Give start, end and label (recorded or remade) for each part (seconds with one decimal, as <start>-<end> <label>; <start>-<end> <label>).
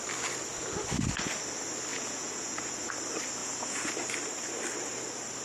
0.0-1.9 recorded; 1.9-2.9 remade; 2.9-3.4 recorded; 3.4-3.9 remade; 3.9-5.4 recorded